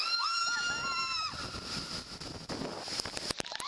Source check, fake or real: real